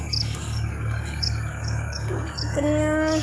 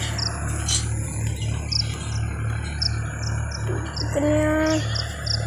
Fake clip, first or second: first